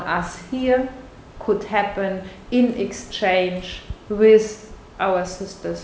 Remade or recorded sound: recorded